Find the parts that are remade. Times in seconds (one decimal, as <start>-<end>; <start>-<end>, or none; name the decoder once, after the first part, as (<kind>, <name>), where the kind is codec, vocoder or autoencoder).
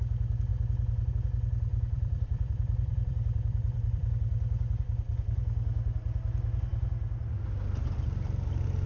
1.7-4.1 (vocoder, BigVGAN v2)